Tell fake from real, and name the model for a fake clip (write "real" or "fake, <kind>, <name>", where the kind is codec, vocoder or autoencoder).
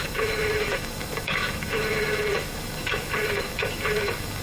fake, autoencoder, DAC-VAE